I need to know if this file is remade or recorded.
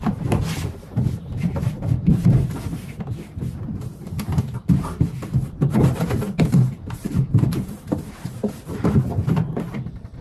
remade